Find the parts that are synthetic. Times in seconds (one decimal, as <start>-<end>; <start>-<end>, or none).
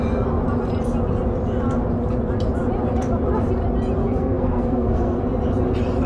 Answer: 4.0-5.2